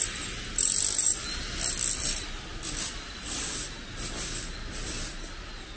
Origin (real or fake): real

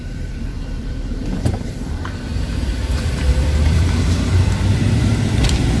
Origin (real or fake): fake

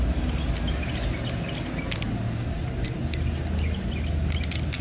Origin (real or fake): real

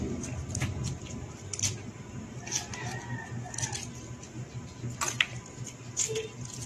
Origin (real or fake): real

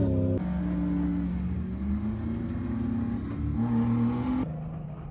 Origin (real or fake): real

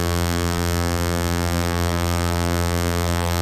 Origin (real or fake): fake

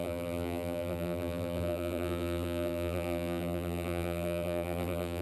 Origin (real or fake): fake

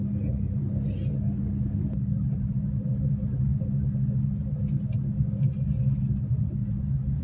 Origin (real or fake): real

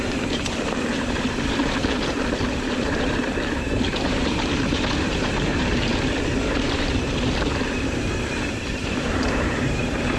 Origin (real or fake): fake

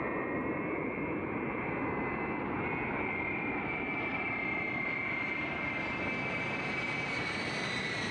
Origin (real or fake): fake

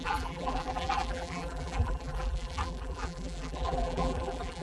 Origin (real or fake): fake